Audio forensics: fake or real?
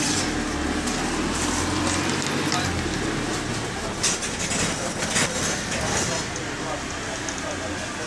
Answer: real